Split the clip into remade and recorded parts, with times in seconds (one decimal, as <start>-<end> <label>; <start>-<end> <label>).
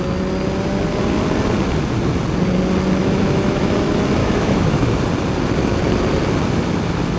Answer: 0.0-3.0 recorded; 3.0-3.7 remade; 3.7-4.2 recorded; 4.2-5.0 remade; 5.0-7.2 recorded